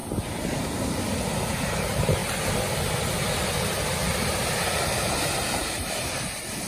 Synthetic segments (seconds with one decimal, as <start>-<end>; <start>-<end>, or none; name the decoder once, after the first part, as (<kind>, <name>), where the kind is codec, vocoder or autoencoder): 1.4-6.7 (vocoder, BigVGAN v2)

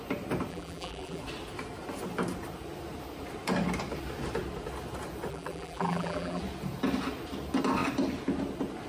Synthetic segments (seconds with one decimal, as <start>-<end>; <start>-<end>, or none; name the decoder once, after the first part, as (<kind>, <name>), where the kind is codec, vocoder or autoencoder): 0.5-1.2 (vocoder, BigVGAN v2); 5.3-6.4

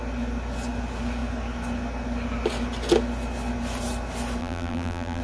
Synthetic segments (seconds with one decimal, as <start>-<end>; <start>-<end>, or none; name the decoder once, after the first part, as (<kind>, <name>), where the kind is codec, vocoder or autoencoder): 4.4-5.2 (vocoder, BigVGAN v2)